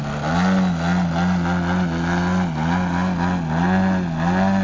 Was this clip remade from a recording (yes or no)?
no